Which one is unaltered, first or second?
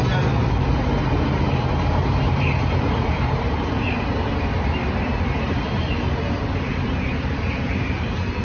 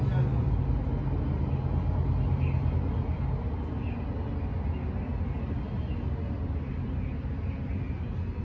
second